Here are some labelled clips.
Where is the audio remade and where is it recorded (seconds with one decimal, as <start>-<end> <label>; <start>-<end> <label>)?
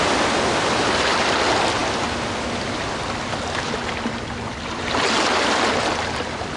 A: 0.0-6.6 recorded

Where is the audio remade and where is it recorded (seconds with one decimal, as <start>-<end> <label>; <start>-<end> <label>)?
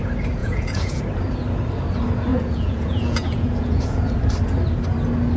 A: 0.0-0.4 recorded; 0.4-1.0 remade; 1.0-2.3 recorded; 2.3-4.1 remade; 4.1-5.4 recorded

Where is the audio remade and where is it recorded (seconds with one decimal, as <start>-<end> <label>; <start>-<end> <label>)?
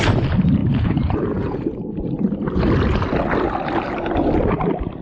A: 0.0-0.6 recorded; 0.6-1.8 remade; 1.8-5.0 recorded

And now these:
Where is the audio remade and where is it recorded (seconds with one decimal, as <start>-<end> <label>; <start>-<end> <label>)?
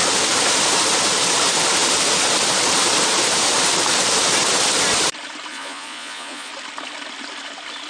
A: 0.0-5.5 recorded; 5.5-6.5 remade; 6.5-7.9 recorded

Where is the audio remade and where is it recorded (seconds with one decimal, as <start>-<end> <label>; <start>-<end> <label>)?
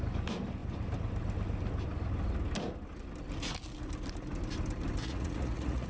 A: 0.0-5.0 recorded; 5.0-5.9 remade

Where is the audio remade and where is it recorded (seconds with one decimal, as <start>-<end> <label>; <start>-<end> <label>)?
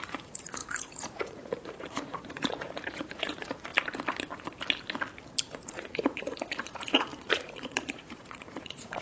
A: 0.0-3.7 remade; 3.7-5.4 recorded; 5.4-9.0 remade